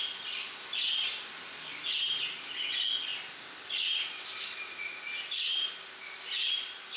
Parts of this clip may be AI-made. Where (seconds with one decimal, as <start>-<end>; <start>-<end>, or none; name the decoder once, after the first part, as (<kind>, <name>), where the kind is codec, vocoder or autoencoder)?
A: none